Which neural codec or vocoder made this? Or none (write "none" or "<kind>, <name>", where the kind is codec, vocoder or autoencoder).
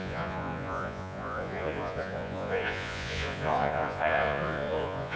vocoder, Vocos